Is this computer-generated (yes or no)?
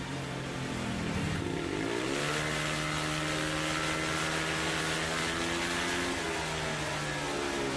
no